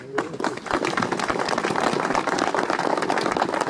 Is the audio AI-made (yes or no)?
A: no